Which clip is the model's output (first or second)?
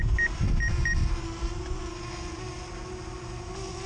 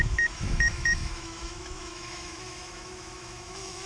second